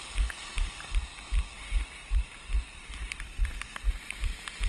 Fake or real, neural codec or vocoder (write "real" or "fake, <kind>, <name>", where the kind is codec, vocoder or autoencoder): real